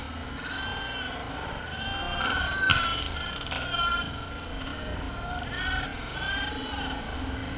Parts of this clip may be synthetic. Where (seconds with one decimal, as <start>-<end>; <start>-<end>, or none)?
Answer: none